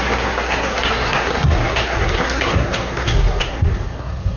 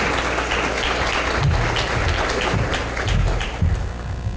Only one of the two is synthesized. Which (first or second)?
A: first